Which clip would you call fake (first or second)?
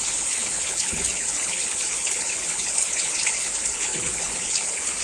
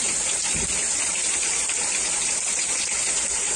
first